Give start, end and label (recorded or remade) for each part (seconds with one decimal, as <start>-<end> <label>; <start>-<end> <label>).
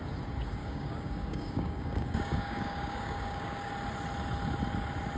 0.0-0.6 recorded; 0.6-3.7 remade; 3.7-5.2 recorded